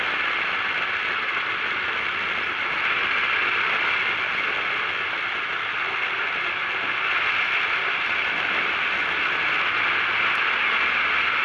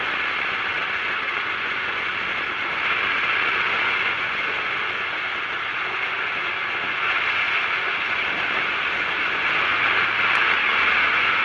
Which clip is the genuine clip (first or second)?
first